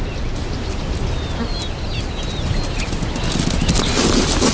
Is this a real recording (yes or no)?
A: yes